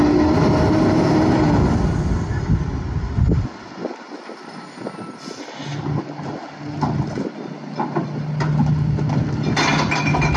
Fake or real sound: real